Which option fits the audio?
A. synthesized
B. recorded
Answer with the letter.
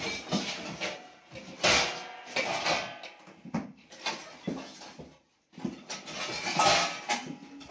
B